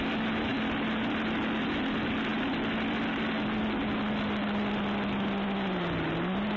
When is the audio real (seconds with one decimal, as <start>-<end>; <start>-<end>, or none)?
0.0-6.6